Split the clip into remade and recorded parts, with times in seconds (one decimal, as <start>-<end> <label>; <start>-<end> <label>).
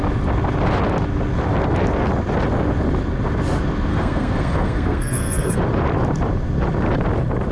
0.0-3.9 recorded; 3.9-5.6 remade; 5.6-7.5 recorded